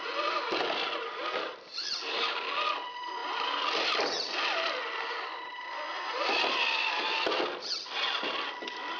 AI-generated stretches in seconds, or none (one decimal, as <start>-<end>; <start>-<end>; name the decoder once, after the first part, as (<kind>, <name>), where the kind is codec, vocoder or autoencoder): none